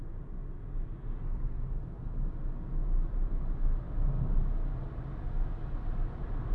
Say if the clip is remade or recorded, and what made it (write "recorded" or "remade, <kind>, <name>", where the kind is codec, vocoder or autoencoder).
recorded